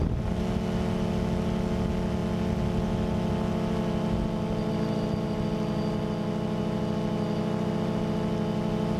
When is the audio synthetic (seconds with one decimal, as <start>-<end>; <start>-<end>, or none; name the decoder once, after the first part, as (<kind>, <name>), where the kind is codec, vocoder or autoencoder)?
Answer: none